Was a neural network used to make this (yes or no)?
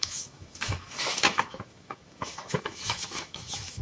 yes